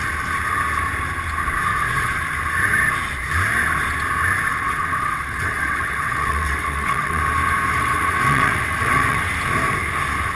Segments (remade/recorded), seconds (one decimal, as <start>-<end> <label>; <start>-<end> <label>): 0.0-1.7 recorded; 1.7-2.2 remade; 2.2-4.5 recorded; 4.5-7.2 remade; 7.2-7.7 recorded; 7.7-9.2 remade; 9.2-10.4 recorded